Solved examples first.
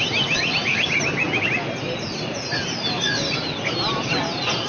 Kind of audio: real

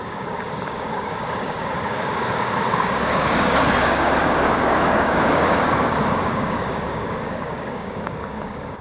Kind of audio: fake